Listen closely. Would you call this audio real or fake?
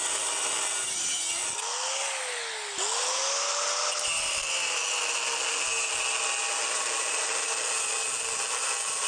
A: real